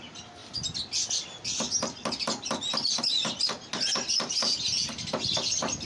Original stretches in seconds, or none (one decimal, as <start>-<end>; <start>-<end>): 0.0-5.8